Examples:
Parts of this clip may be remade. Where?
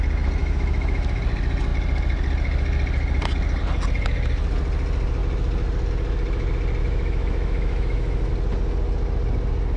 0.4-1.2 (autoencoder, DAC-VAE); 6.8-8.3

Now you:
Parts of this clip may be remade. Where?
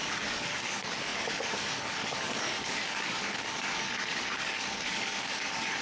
0.0-5.8 (codec, DAC)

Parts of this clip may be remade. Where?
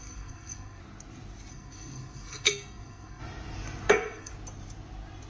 0.0-0.8 (codec, SNAC); 1.5-3.2; 3.9-4.3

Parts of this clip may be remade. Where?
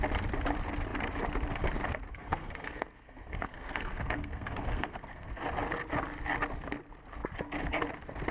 2.1-5.4 (codec, SNAC)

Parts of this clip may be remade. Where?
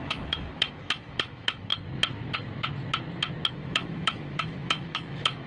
0.0-1.7 (autoencoder, DAC-VAE); 3.5-5.5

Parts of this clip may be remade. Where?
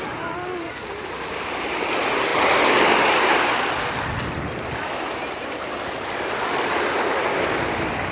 none